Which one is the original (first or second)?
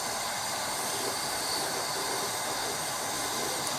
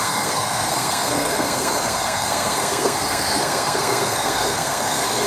first